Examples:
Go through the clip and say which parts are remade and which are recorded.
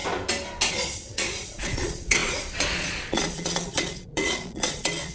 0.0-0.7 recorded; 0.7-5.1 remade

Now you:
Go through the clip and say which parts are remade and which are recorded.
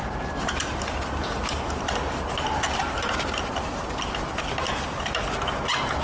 0.0-6.0 recorded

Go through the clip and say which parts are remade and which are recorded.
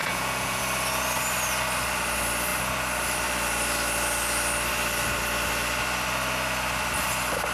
0.0-0.6 remade; 0.6-7.5 recorded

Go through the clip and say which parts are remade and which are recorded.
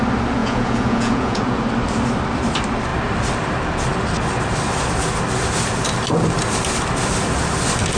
0.0-0.4 recorded; 0.4-1.6 remade; 1.6-8.0 recorded